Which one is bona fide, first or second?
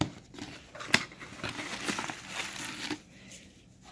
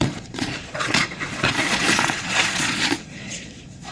first